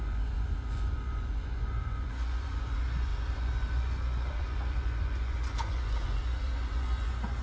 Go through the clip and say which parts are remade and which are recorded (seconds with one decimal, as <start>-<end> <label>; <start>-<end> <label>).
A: 0.0-7.4 remade